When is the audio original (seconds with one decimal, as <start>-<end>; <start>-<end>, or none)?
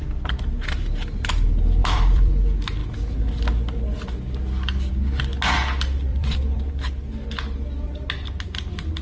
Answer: 0.0-1.8; 2.4-6.1; 6.7-9.0